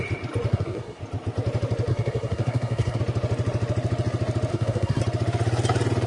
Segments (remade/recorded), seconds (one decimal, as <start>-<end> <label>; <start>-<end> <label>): 0.0-0.5 recorded; 0.5-1.0 remade; 1.0-1.9 recorded; 1.9-3.0 remade; 3.0-4.5 recorded; 4.5-5.0 remade; 5.0-6.1 recorded